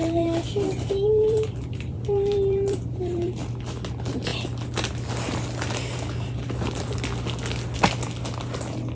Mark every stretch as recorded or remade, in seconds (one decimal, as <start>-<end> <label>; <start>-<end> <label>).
0.0-3.4 remade; 3.4-8.9 recorded